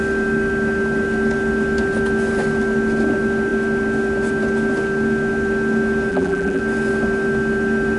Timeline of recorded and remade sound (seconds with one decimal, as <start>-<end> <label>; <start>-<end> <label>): 0.0-6.1 recorded; 6.1-6.6 remade; 6.6-8.0 recorded